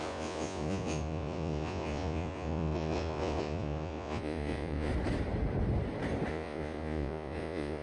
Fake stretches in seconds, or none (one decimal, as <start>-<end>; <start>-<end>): 0.0-4.9; 6.3-7.8